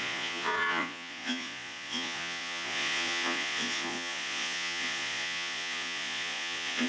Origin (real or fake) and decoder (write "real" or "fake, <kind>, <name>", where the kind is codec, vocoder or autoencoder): fake, vocoder, Vocos